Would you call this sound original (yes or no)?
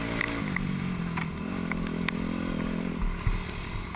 yes